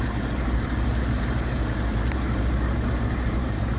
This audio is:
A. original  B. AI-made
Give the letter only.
B